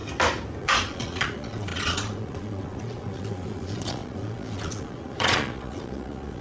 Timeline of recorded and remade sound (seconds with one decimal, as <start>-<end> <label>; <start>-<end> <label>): 0.0-0.6 recorded; 0.6-6.4 remade